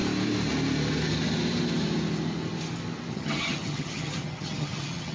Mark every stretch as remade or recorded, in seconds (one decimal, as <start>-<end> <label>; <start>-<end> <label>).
0.0-3.1 recorded; 3.1-5.1 remade